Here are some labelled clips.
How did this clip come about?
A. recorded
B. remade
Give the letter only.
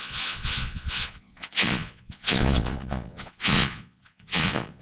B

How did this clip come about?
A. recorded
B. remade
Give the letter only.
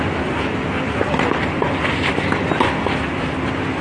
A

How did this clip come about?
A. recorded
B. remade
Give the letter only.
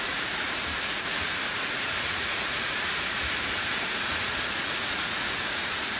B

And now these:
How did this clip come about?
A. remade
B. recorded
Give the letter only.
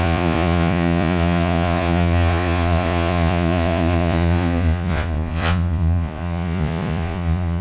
A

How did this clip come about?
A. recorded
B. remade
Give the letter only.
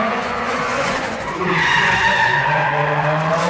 B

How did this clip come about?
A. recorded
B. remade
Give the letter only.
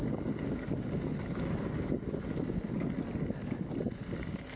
A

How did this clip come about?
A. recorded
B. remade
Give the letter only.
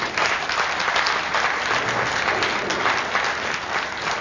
A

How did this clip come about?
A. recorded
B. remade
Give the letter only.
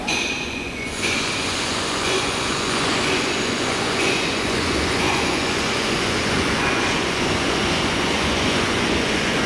B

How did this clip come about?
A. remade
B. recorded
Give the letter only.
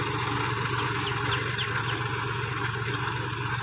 B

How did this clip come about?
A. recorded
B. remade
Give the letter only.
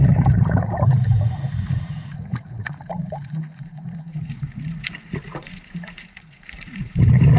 B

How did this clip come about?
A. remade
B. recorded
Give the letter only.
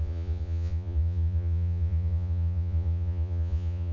A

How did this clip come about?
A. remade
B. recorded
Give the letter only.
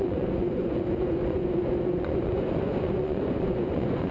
A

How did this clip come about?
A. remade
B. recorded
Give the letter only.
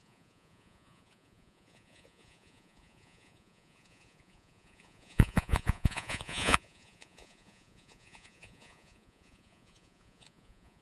A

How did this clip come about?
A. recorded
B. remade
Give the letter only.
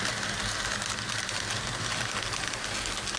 A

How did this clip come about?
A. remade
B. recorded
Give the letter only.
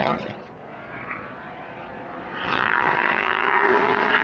A